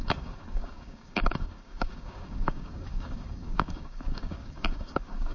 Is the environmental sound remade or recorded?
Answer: remade